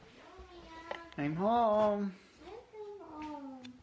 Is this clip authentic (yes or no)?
yes